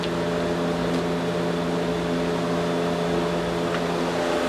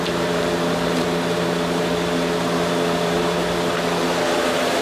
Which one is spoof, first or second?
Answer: second